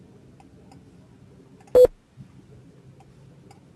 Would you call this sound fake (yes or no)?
no